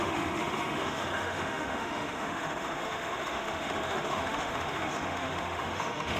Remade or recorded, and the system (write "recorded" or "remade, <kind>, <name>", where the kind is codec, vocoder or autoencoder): remade, autoencoder, DAC-VAE